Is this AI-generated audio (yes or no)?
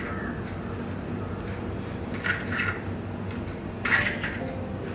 no